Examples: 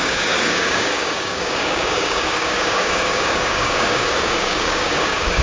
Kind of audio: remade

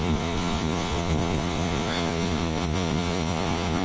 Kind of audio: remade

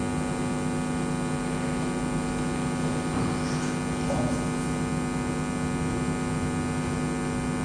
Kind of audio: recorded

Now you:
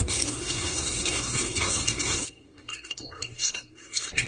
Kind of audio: remade